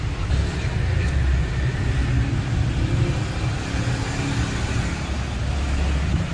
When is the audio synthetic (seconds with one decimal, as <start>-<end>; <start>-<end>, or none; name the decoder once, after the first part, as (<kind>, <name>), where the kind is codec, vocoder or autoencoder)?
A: none